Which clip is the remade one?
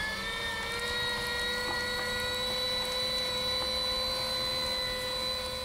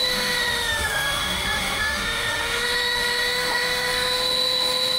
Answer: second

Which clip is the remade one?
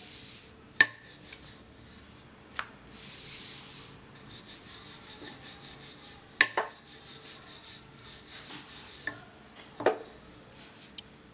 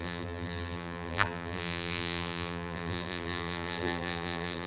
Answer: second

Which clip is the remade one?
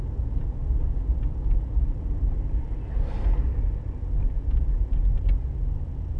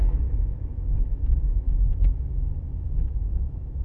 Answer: second